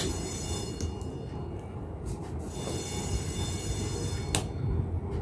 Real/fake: real